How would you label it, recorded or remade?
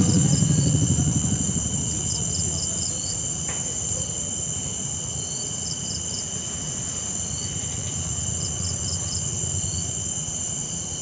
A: remade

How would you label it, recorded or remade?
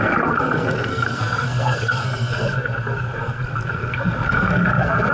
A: remade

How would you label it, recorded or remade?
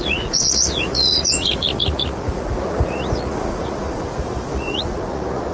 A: remade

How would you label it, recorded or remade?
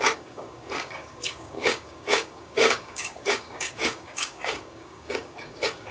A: remade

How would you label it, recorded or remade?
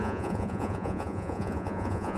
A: remade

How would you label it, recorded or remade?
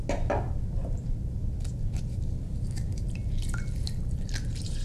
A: recorded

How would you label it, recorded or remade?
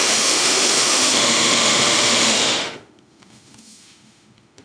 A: remade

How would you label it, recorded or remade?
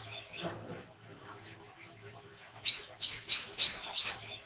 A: remade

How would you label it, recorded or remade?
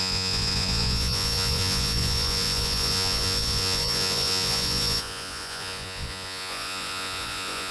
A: remade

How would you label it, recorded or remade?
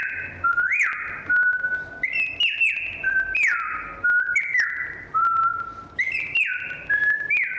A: recorded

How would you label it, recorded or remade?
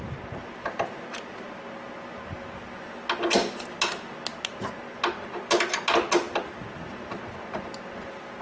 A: recorded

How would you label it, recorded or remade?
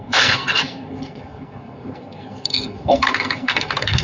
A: remade